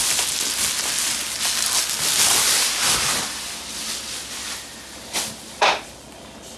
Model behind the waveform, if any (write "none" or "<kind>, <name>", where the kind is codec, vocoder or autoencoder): none